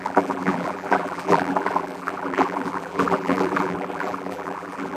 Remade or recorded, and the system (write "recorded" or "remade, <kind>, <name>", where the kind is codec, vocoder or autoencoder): remade, vocoder, BigVGAN v2